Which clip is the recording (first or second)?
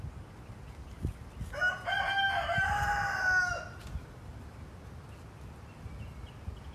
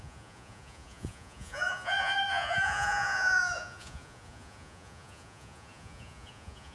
first